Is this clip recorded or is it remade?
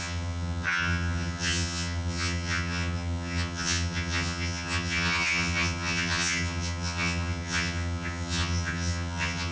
remade